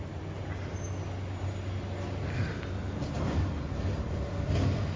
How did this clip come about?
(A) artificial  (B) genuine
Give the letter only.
B